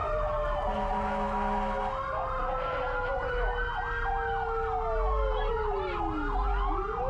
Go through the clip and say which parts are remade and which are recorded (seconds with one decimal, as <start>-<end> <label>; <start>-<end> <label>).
0.0-7.1 recorded

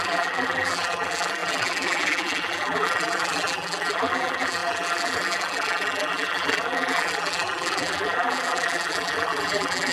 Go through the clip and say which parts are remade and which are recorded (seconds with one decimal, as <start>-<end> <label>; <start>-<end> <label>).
0.0-9.9 remade

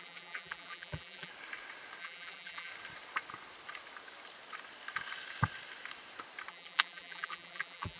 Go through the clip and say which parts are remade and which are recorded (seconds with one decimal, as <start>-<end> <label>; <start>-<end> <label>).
0.0-1.3 remade; 1.3-2.0 recorded; 2.0-2.7 remade; 2.7-6.5 recorded; 6.5-8.0 remade

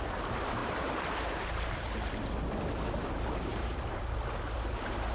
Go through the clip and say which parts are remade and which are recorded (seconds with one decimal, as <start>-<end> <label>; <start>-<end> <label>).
0.0-0.6 recorded; 0.6-1.7 remade; 1.7-3.5 recorded; 3.5-4.0 remade; 4.0-5.1 recorded

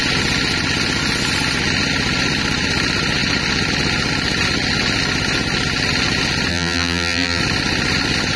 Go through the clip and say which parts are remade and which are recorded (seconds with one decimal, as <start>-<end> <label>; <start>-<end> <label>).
0.0-6.5 recorded; 6.5-7.4 remade; 7.4-8.4 recorded

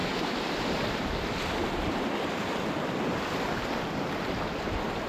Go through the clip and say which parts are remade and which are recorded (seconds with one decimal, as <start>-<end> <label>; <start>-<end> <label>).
0.0-3.1 remade; 3.1-5.1 recorded